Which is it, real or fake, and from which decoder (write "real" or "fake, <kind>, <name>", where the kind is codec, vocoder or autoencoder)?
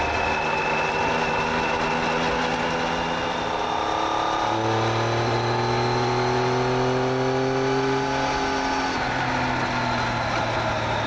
real